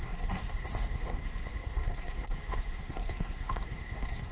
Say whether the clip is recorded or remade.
remade